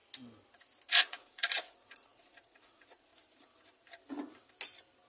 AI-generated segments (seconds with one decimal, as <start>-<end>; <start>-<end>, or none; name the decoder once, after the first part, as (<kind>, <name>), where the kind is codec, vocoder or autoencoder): 0.9-3.1 (vocoder, Vocos)